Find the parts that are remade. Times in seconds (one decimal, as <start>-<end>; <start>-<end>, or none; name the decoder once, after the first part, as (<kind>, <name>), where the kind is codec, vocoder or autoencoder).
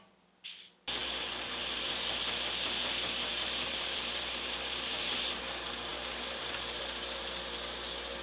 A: 1.0-2.2 (vocoder, BigVGAN v2); 3.3-5.4; 5.9-6.8